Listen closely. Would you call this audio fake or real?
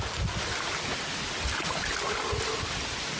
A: real